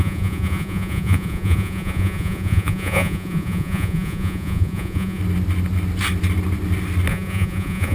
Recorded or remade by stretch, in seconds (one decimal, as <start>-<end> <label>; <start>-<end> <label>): 0.0-5.2 remade; 5.2-7.1 recorded; 7.1-7.9 remade